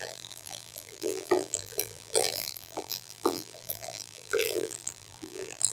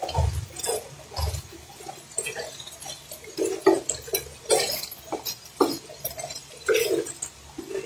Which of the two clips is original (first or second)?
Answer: second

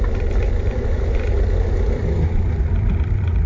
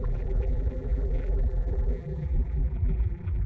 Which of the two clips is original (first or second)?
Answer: first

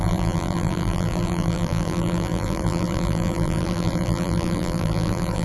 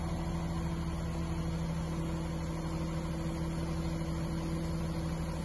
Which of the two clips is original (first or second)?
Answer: second